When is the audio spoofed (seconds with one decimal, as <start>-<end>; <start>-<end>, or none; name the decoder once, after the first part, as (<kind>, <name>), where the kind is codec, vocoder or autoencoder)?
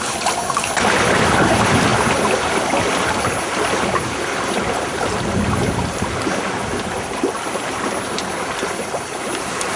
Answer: none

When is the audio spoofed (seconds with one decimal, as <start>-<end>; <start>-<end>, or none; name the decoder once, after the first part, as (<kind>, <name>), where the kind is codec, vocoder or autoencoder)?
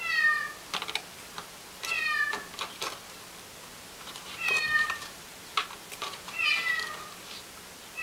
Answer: 3.7-6.5 (vocoder, BigVGAN v2)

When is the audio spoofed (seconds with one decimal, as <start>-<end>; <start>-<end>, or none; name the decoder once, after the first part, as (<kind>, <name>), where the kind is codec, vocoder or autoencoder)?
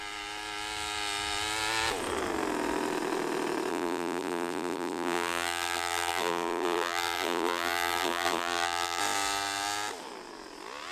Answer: 3.7-9.0 (vocoder, BigVGAN v2)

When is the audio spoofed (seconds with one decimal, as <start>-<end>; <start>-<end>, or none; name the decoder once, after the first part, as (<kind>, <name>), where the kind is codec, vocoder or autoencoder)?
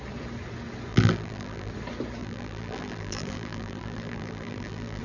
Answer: 0.9-1.7 (vocoder, BigVGAN v2); 2.2-5.0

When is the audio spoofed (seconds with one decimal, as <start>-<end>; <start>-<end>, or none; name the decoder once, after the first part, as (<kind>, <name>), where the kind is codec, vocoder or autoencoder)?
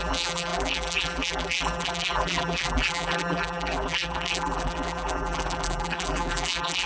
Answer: 0.0-6.9 (vocoder, BigVGAN v2)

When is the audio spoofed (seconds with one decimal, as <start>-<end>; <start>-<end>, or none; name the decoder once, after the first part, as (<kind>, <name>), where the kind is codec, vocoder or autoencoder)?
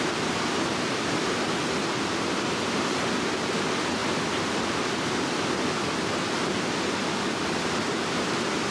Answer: none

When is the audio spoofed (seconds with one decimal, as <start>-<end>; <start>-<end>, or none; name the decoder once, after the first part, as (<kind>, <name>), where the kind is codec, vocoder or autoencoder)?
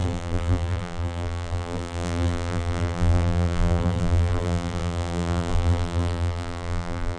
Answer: 0.0-7.2 (vocoder, BigVGAN v2)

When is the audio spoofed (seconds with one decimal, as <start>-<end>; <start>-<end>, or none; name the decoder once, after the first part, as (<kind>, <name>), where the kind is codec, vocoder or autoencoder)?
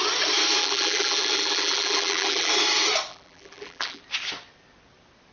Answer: 0.6-2.5 (vocoder, BigVGAN v2); 3.1-4.0